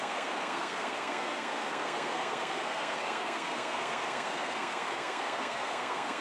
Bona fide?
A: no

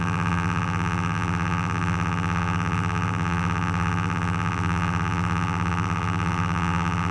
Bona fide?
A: no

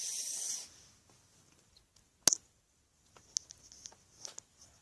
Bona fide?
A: yes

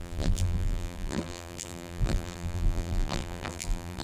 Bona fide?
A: no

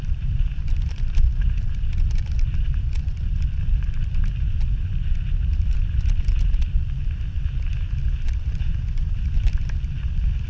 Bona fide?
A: no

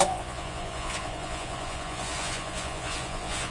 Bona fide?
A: no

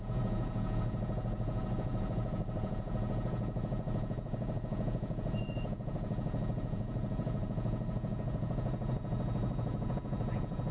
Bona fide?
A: no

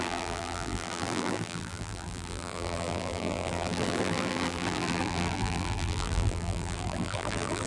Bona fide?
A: no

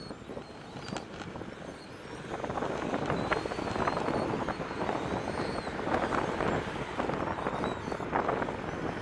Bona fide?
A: yes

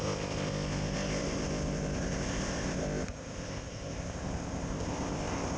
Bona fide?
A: no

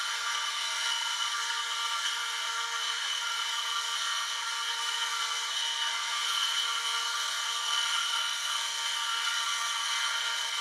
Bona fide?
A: no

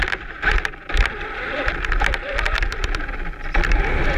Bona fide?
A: yes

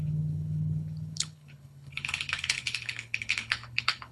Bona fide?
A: no